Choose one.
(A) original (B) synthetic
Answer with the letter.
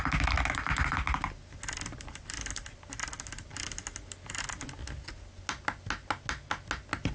A